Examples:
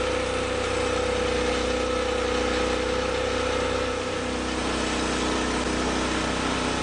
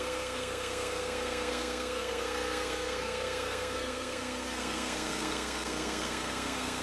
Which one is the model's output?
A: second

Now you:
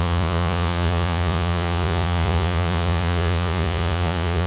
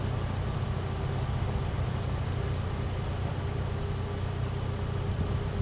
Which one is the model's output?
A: first